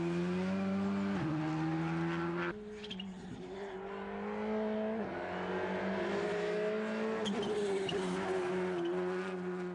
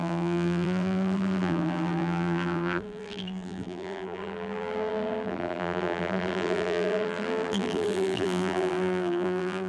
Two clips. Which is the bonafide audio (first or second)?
first